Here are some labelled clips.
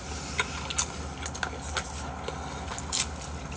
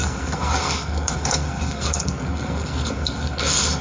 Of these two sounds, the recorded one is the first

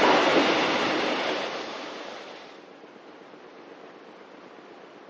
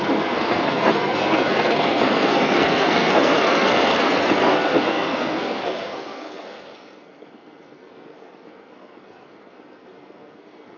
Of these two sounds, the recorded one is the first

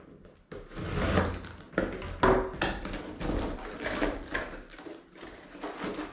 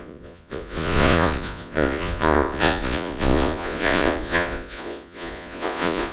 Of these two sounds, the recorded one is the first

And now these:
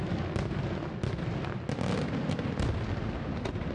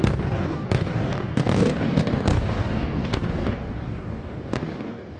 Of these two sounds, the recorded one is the first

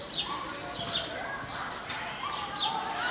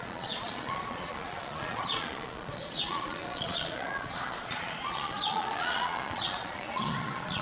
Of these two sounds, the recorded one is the first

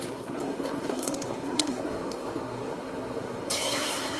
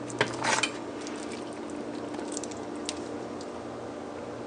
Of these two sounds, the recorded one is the second